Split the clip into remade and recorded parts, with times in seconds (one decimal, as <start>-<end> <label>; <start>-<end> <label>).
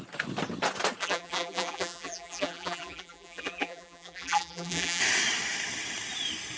0.0-1.0 recorded; 1.0-5.0 remade; 5.0-6.6 recorded